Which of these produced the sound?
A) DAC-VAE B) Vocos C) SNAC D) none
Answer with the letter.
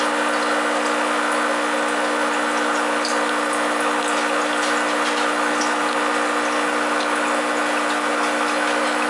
D